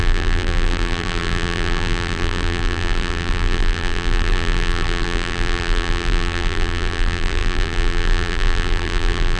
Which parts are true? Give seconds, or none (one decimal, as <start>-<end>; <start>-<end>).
none